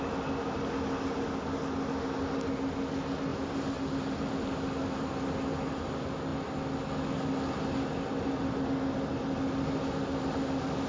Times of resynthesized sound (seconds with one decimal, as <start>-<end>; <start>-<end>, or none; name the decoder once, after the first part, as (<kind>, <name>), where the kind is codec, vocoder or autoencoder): none